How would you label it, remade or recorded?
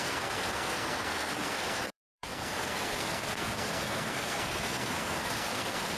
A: remade